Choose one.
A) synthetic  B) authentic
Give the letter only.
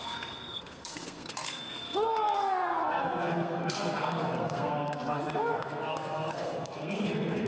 A